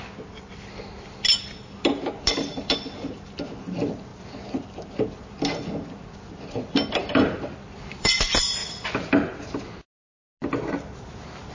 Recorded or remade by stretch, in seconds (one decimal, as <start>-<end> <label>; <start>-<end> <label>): 0.0-4.1 recorded; 4.1-4.9 remade; 4.9-7.0 recorded; 7.0-8.1 remade; 8.1-8.6 recorded; 8.6-10.1 remade; 10.1-11.5 recorded